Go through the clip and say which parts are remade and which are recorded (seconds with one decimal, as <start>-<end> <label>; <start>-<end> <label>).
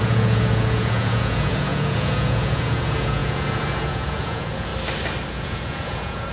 0.0-4.7 remade; 4.7-5.3 recorded; 5.3-6.3 remade